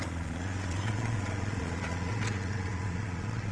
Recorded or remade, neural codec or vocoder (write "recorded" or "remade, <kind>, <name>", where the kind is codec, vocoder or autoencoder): remade, vocoder, Vocos